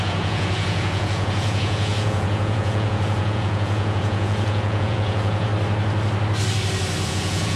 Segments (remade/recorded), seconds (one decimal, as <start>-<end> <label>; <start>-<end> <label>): 0.0-5.5 remade; 5.5-7.1 recorded; 7.1-7.6 remade